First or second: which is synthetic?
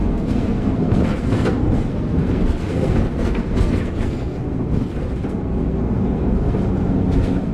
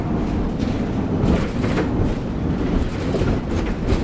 first